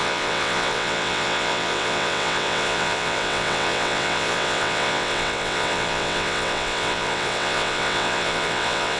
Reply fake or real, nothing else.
fake